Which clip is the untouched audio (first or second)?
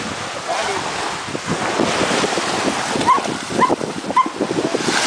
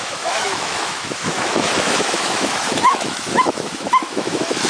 first